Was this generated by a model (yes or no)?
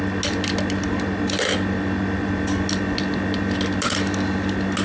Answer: no